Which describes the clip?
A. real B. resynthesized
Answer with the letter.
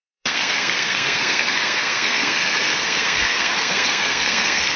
B